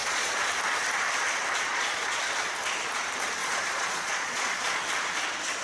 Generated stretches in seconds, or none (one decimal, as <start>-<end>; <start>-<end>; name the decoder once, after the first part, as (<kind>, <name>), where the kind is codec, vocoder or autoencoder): 0.0-0.5 (vocoder, Vocos); 1.7-2.2; 3.4-4.8